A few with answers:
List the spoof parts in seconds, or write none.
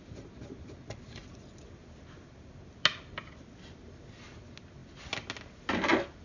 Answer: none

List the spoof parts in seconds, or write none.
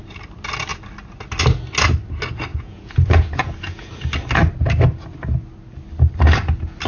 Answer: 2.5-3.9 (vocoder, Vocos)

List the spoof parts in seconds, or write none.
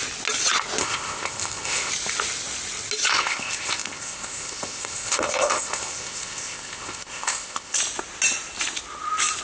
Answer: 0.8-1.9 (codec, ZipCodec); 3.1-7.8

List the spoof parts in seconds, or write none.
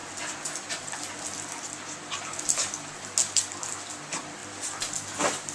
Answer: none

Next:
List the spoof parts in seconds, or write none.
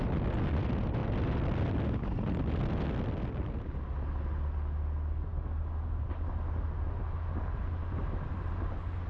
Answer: none